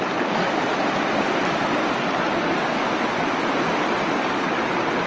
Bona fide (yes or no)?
yes